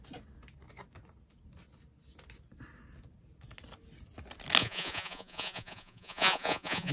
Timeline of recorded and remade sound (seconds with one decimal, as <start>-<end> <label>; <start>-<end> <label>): 0.0-4.6 recorded; 4.6-6.9 remade